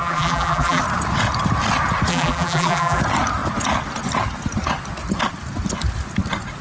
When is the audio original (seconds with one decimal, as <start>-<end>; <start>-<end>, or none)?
0.8-2.1; 3.0-6.6